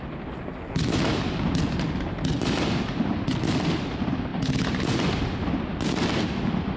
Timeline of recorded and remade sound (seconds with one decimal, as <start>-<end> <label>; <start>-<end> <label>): 0.0-6.8 recorded